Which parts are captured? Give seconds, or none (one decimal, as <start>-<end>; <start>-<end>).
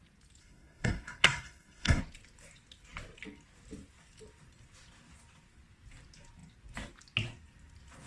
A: 0.0-0.4; 2.0-8.1